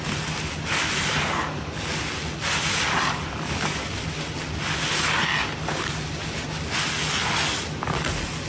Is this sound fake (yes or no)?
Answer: no